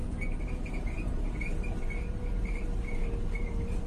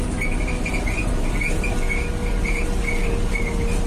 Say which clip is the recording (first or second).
second